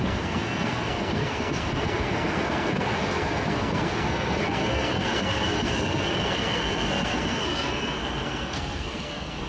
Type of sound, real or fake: fake